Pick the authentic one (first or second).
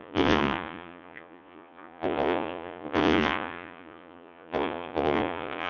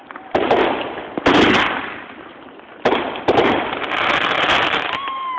second